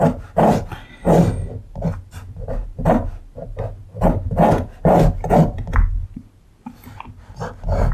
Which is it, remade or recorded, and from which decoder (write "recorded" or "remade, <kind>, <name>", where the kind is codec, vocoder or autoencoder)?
recorded